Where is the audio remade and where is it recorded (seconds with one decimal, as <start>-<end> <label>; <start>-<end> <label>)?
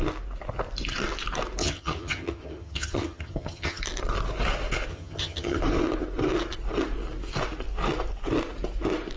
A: 0.0-1.6 recorded; 1.6-3.8 remade; 3.8-4.9 recorded; 4.9-5.6 remade; 5.6-9.2 recorded